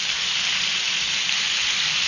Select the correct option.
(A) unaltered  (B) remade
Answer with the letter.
A